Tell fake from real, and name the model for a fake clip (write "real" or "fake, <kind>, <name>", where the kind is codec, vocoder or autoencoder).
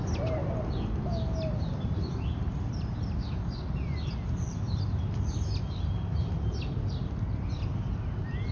real